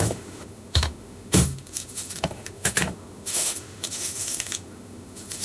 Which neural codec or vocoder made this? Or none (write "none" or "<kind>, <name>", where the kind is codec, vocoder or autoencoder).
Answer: autoencoder, DAC-VAE